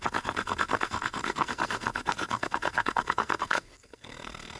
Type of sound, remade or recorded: remade